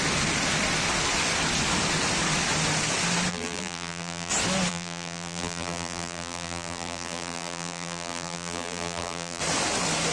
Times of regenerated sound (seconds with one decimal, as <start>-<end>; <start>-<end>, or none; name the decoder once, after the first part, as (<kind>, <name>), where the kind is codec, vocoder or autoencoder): 3.3-4.3 (vocoder, BigVGAN v2); 4.7-9.4